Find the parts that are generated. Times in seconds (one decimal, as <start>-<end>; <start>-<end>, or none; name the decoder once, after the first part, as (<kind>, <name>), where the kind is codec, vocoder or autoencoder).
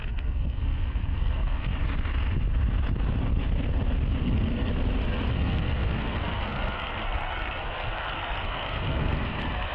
0.0-1.7 (codec, SNAC); 4.2-4.7; 5.3-9.7